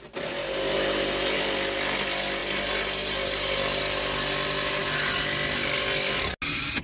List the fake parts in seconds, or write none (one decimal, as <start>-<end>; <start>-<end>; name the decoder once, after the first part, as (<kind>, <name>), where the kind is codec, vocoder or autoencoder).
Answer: none